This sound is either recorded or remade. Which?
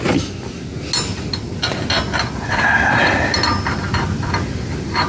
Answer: recorded